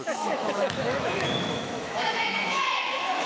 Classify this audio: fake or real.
fake